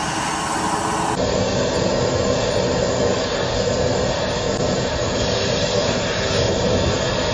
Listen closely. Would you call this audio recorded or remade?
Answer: recorded